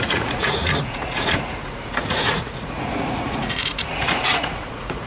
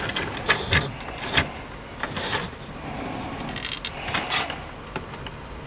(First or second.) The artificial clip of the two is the first